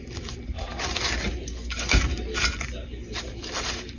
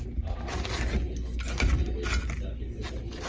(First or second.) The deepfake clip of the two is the first